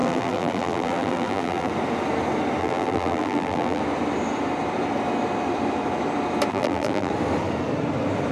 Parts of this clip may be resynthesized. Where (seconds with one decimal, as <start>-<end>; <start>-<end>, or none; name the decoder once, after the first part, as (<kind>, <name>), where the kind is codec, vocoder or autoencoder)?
0.0-1.7 (vocoder, BigVGAN v2); 2.6-3.8; 6.5-7.1